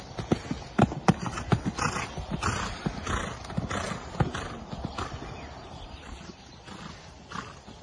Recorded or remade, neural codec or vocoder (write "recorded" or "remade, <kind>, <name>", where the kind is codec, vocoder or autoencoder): recorded